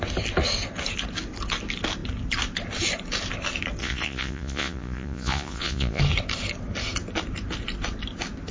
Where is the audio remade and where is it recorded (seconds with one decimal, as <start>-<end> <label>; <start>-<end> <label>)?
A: 0.0-3.8 recorded; 3.8-6.0 remade; 6.0-8.5 recorded

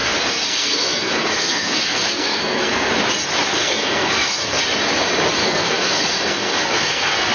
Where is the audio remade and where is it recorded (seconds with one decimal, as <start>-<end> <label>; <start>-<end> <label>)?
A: 0.0-2.9 remade; 2.9-3.6 recorded; 3.6-4.6 remade; 4.6-5.4 recorded; 5.4-7.3 remade